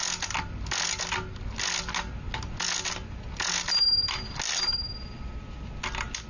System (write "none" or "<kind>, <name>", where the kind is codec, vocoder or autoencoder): none